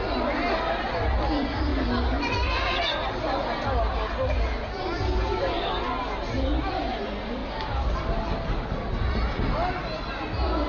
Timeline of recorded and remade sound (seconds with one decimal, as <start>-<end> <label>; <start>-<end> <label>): 0.0-10.7 recorded